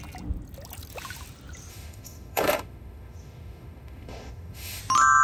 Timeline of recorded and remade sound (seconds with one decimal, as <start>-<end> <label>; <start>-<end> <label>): 0.0-1.7 recorded; 1.7-4.8 remade; 4.8-5.2 recorded